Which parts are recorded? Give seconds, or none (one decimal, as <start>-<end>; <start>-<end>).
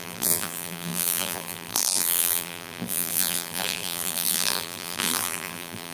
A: none